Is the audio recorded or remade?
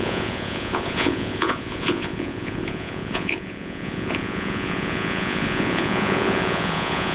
remade